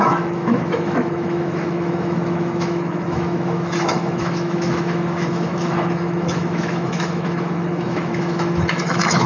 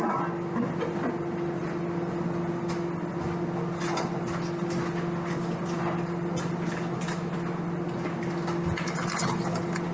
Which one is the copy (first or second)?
first